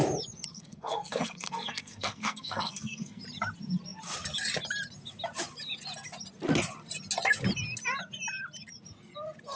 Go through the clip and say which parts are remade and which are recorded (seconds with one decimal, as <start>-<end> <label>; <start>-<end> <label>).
0.0-0.5 recorded; 0.5-3.2 remade; 3.2-9.6 recorded